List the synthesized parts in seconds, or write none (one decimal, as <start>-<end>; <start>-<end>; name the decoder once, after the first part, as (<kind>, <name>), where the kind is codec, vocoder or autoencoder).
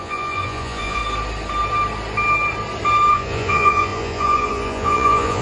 0.0-1.0 (vocoder, Vocos); 3.1-5.4